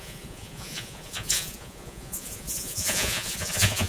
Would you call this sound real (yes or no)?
no